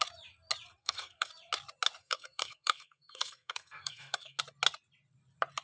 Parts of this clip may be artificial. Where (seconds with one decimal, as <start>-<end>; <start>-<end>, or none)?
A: 0.8-1.3; 2.0-4.4